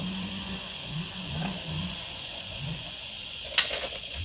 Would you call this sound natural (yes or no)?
no